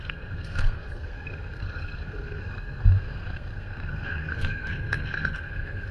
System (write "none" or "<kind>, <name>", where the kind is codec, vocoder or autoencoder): codec, SNAC